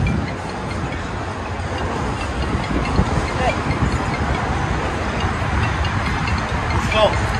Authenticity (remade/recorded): recorded